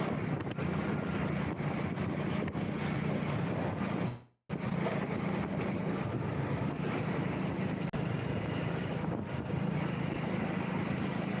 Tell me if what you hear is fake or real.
real